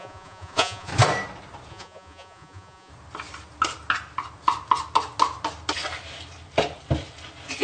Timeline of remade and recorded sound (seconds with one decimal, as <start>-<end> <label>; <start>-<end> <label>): 0.0-0.9 remade; 0.9-1.7 recorded; 1.7-2.9 remade; 2.9-7.6 recorded